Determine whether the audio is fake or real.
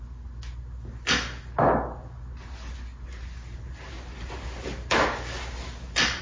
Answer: real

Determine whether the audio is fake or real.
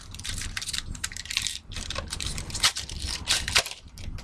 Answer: fake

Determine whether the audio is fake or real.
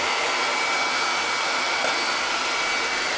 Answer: real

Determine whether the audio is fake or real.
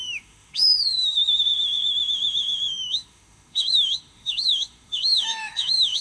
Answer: fake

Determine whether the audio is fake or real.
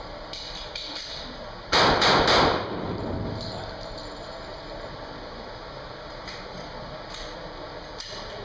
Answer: fake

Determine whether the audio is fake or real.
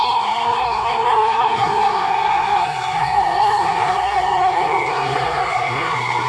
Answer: fake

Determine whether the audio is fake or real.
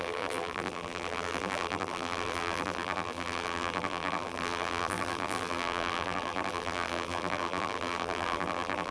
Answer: fake